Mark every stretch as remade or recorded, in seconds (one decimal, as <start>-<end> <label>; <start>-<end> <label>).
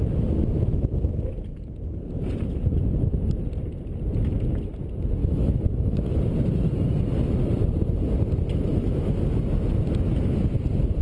0.0-5.2 recorded; 5.2-6.2 remade; 6.2-8.7 recorded; 8.7-9.4 remade; 9.4-11.0 recorded